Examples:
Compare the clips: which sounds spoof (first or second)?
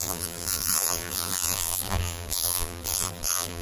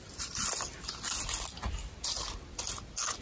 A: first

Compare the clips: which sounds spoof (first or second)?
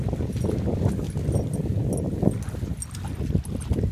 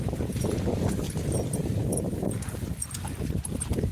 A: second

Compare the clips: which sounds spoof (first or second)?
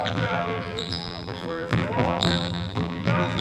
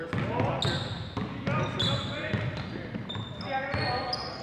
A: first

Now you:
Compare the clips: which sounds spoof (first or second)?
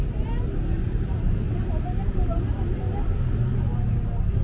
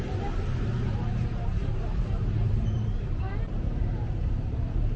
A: second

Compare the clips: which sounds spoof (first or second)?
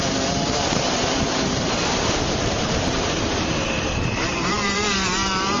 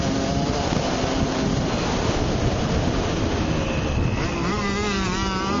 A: first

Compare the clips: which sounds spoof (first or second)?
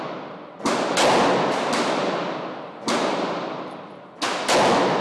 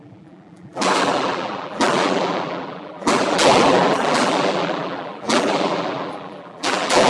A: second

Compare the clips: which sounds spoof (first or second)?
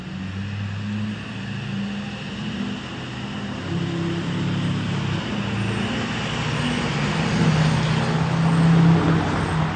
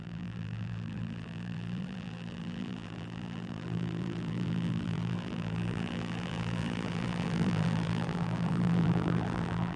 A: second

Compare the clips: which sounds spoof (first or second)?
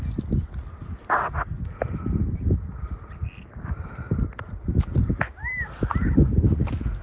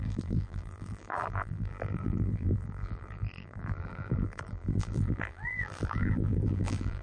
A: second